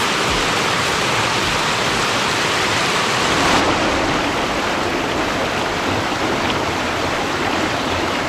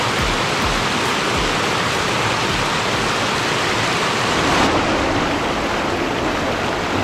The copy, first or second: first